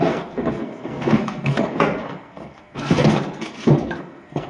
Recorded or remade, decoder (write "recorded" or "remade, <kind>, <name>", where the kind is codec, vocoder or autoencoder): remade, codec, SNAC